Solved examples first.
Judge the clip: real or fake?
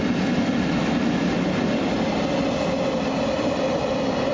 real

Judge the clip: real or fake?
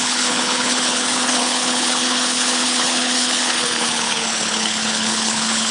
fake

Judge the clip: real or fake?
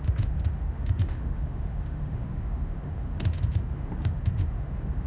fake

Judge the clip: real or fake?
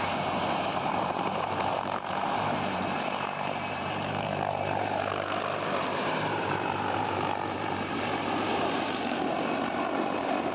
fake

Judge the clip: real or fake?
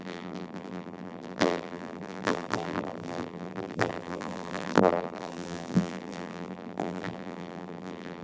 fake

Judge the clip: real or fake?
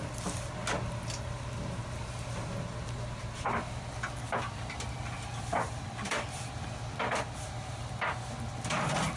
real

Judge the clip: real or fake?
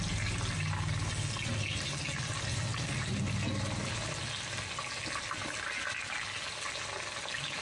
real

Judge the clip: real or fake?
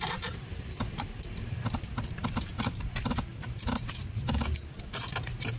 fake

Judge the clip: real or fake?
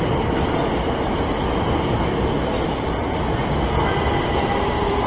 real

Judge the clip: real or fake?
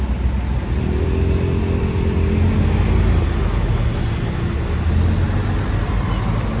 real